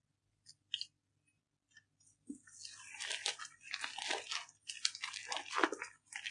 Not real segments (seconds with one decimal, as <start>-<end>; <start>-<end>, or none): none